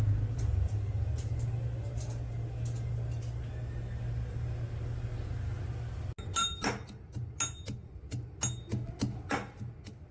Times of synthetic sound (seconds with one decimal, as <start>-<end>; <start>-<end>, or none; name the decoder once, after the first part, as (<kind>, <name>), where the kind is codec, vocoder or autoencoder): none